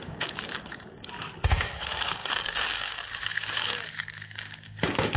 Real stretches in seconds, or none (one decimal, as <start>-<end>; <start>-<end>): 1.0-1.5